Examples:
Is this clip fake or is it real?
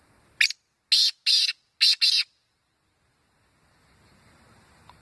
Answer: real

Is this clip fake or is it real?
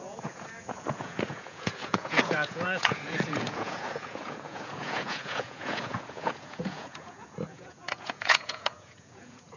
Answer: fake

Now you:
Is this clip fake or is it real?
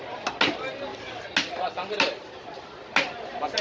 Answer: real